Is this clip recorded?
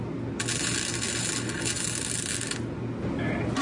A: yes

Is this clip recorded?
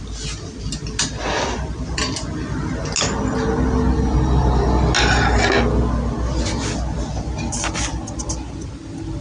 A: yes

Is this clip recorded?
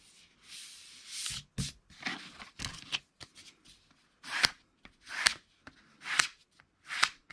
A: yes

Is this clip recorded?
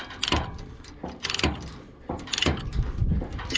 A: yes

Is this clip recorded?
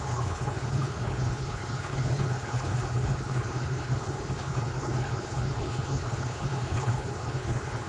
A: no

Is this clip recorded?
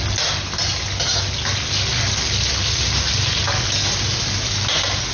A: yes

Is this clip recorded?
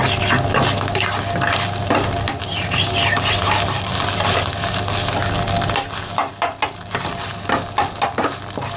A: yes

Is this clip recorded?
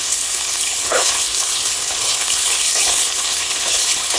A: no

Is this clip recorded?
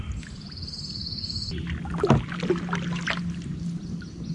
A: yes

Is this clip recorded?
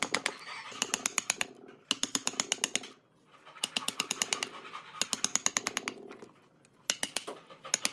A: yes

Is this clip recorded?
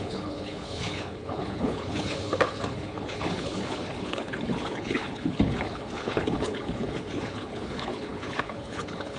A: no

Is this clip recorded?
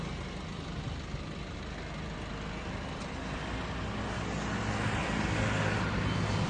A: yes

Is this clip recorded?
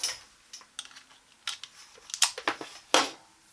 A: yes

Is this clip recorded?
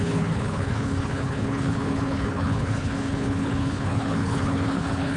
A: no